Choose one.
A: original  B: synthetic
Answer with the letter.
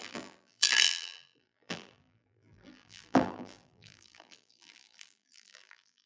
B